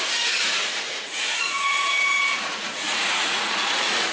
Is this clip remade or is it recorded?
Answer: remade